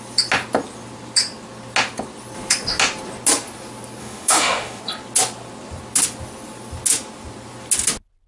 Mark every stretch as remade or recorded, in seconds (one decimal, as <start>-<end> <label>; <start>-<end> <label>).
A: 0.0-4.0 recorded; 4.0-4.8 remade; 4.8-8.3 recorded